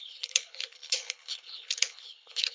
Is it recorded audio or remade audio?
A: remade